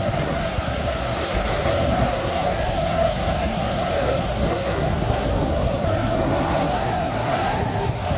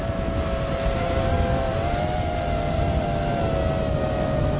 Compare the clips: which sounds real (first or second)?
second